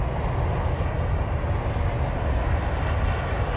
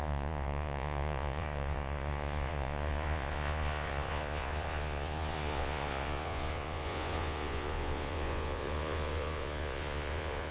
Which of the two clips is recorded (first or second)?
first